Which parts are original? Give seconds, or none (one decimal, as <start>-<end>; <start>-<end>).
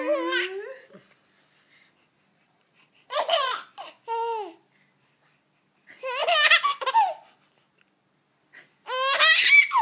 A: 0.0-2.3; 3.7-9.8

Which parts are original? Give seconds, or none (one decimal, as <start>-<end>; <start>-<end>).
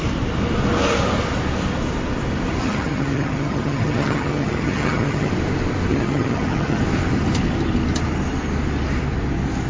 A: 0.0-2.6; 5.3-5.9; 6.8-9.7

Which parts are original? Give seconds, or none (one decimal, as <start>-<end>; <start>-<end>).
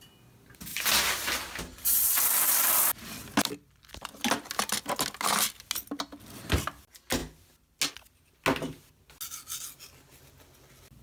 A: 0.0-11.0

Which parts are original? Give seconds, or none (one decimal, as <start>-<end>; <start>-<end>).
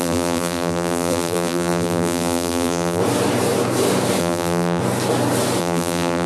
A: 3.0-4.2; 4.8-5.6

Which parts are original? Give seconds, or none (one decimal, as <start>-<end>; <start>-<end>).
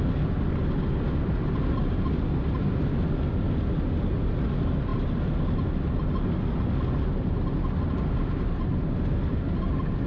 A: 0.0-10.1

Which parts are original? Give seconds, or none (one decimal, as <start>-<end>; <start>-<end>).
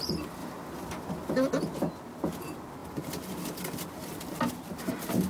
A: 0.0-0.4; 1.3-2.8; 3.8-5.3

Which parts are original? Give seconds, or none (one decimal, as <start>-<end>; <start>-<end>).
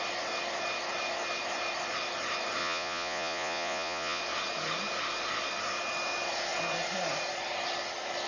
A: 0.0-2.6; 4.2-8.3